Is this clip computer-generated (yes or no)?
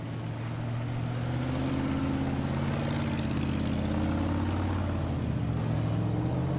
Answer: no